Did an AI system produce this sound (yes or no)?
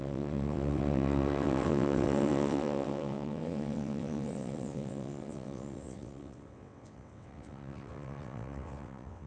yes